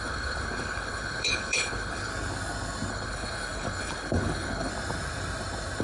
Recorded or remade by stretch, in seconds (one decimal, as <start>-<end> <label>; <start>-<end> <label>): 0.0-2.1 remade; 2.1-2.9 recorded; 2.9-4.7 remade; 4.7-5.8 recorded